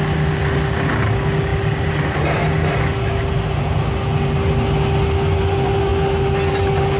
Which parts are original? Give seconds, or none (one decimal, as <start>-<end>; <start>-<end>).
0.0-7.0